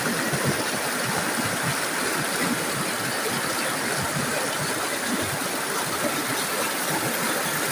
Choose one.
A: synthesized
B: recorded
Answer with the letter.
B